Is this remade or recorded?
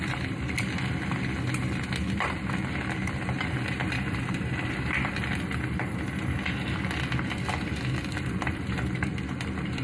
recorded